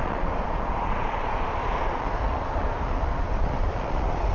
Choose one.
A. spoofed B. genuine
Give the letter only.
A